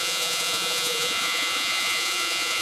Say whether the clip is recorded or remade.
remade